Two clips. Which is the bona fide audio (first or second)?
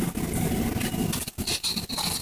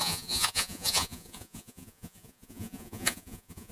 first